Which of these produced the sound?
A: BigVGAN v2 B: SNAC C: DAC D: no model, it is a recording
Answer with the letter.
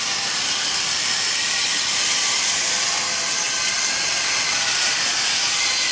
D